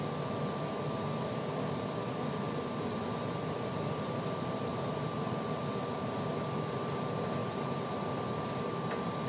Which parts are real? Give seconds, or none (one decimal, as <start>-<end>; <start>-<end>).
0.0-4.7; 5.7-7.4; 7.9-9.3